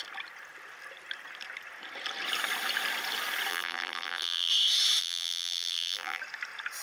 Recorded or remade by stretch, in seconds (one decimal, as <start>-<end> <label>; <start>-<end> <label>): 0.0-3.5 recorded; 3.5-4.5 remade; 4.5-5.0 recorded; 5.0-6.2 remade; 6.2-6.8 recorded